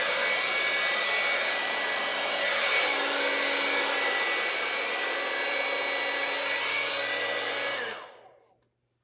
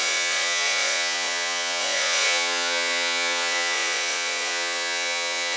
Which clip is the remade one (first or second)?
second